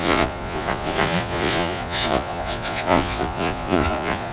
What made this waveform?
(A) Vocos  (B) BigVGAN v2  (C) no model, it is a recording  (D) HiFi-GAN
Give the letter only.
A